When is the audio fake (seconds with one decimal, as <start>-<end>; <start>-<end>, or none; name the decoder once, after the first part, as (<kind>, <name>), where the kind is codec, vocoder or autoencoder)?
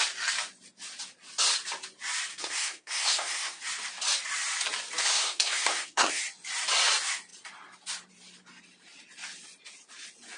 2.3-3.6 (codec, SNAC); 5.0-6.2